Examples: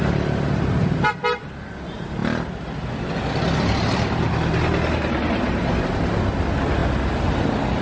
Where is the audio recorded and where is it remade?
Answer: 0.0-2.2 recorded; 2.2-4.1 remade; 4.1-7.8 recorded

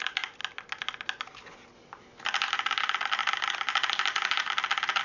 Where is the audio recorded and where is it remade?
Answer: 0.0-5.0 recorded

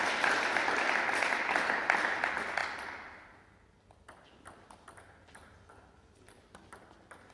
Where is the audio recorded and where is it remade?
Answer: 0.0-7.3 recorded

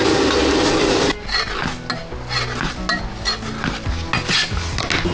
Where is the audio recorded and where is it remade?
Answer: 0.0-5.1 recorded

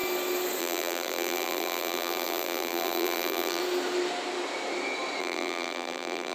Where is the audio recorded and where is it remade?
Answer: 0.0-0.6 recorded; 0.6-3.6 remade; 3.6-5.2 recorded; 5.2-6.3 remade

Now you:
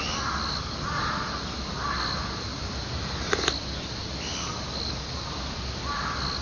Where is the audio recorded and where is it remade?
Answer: 0.0-6.4 recorded

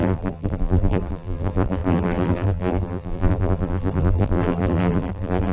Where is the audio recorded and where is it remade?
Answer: 0.0-5.5 remade

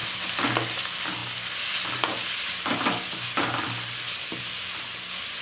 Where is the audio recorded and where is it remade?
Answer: 0.0-1.2 recorded; 1.2-4.4 remade; 4.4-5.4 recorded